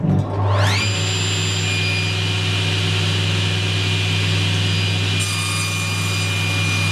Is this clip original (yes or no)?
yes